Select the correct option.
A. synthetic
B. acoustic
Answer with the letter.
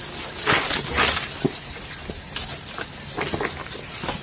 B